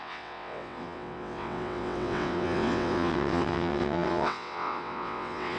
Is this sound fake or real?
fake